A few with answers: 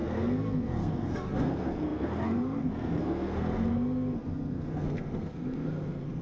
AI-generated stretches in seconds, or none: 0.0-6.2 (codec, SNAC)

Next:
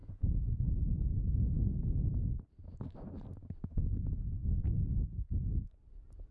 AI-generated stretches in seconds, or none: 0.0-1.6 (vocoder, Vocos); 4.4-5.0